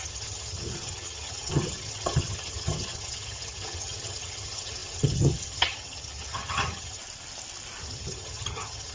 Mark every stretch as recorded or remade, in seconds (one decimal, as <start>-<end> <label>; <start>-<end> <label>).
0.0-7.0 remade; 7.0-7.8 recorded; 7.8-8.9 remade